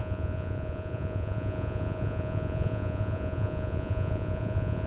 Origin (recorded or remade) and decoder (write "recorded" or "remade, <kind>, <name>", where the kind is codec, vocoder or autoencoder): remade, vocoder, Vocos